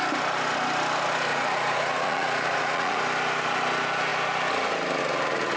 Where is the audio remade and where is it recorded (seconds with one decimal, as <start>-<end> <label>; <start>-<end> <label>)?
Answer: 0.0-1.3 recorded; 1.3-3.0 remade; 3.0-5.6 recorded

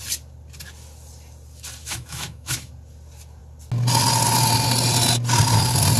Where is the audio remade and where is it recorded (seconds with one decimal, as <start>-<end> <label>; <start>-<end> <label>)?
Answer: 0.0-1.8 recorded; 1.8-2.7 remade; 2.7-6.0 recorded